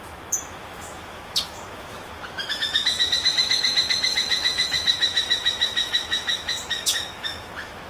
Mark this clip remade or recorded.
remade